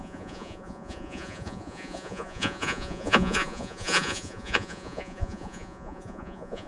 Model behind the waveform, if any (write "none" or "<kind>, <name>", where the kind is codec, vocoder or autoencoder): vocoder, Vocos